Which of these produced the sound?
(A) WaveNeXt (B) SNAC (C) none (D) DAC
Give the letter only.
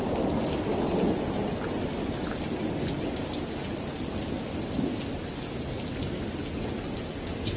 C